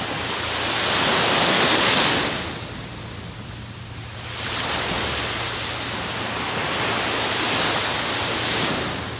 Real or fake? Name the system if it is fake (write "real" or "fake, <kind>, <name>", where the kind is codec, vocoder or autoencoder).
real